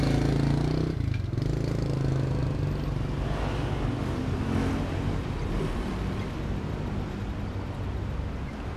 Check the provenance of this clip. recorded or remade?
recorded